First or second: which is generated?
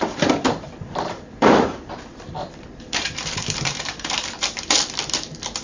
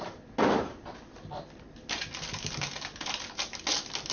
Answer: first